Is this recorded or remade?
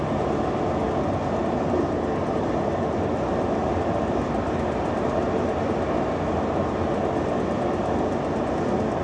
recorded